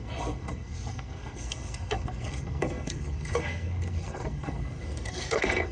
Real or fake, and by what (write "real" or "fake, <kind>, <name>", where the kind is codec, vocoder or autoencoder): fake, codec, SNAC